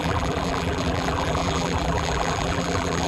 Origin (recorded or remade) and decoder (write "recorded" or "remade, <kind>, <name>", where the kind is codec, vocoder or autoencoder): remade, vocoder, BigVGAN v2